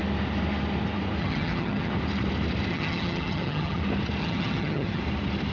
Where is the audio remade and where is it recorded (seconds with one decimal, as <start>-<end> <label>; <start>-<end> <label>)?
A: 0.0-1.2 recorded; 1.2-1.9 remade; 1.9-2.7 recorded; 2.7-3.8 remade; 3.8-4.2 recorded; 4.2-5.0 remade; 5.0-5.5 recorded